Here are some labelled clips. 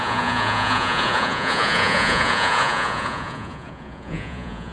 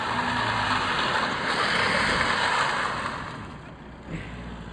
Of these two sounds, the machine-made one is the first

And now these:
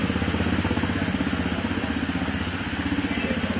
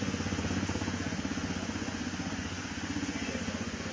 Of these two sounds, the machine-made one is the second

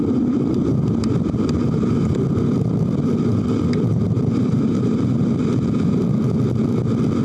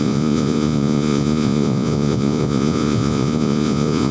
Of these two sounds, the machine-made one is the second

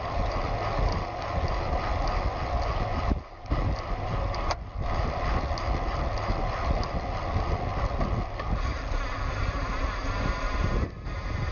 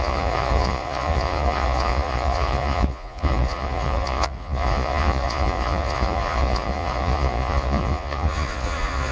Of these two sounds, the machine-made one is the second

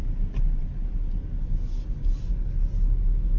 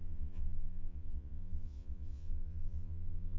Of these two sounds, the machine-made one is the second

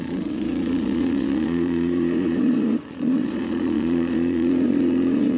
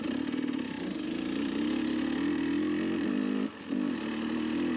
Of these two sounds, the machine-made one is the first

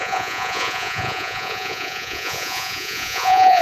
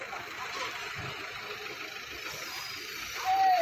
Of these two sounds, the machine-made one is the first